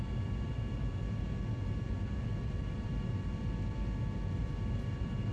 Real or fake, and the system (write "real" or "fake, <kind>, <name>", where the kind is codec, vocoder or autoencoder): real